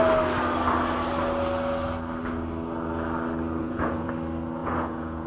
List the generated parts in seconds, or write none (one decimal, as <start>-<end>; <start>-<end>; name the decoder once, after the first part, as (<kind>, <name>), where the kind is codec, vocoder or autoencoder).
3.6-4.1 (vocoder, Vocos); 4.6-5.3